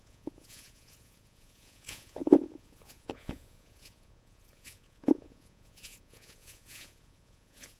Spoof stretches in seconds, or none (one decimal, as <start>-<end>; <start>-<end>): 0.0-7.8